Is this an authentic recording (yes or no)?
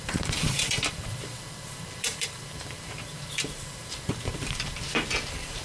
no